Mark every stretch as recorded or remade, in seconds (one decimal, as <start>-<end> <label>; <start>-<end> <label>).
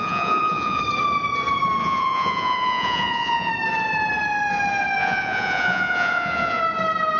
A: 0.0-0.8 remade; 0.8-1.8 recorded; 1.8-3.5 remade; 3.5-5.0 recorded; 5.0-6.6 remade; 6.6-7.2 recorded